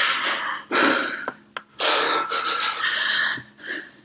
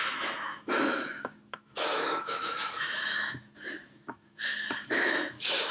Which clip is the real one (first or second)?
first